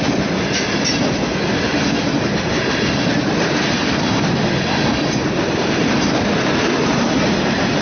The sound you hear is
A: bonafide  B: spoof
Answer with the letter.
A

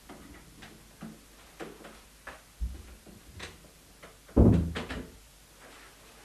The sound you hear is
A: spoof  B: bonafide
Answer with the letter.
B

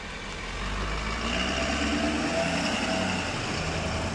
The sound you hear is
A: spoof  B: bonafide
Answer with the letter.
B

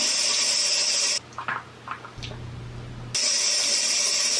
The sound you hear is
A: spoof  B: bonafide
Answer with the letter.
B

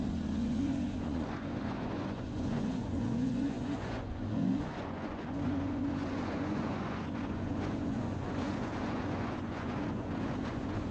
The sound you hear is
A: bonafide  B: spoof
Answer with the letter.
B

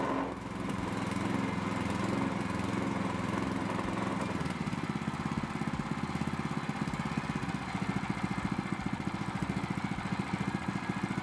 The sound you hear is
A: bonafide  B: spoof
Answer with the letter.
A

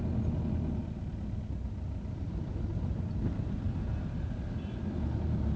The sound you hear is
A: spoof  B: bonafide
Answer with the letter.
B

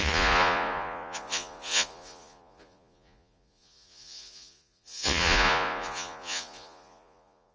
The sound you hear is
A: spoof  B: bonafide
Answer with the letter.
A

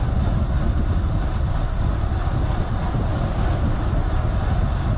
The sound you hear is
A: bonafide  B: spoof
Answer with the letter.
A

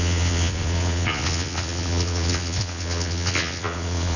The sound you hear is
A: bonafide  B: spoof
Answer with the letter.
B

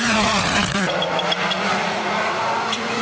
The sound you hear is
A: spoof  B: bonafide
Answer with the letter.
A